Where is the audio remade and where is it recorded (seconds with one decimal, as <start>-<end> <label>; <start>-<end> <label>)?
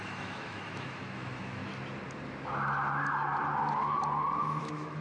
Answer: 0.0-1.6 remade; 1.6-4.6 recorded; 4.6-5.0 remade